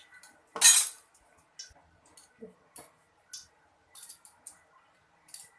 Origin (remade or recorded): recorded